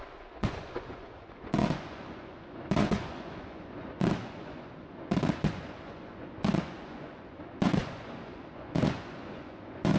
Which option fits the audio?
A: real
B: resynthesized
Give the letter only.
B